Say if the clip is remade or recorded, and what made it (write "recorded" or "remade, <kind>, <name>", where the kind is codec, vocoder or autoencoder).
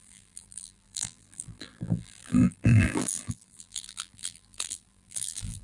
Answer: remade, vocoder, BigVGAN v2